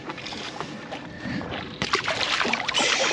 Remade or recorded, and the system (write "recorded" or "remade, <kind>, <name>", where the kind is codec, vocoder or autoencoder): remade, vocoder, BigVGAN v2